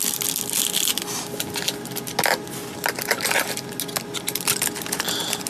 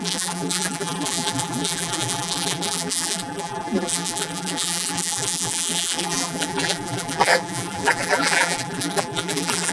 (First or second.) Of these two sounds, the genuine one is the first